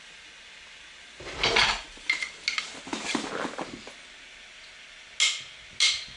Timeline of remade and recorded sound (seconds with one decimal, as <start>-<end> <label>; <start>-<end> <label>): 0.0-6.2 recorded